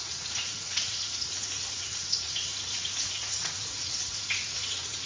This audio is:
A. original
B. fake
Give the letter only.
B